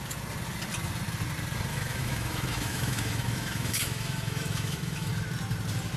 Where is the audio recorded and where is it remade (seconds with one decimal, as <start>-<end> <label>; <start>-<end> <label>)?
0.0-1.7 recorded; 1.7-5.1 remade; 5.1-6.0 recorded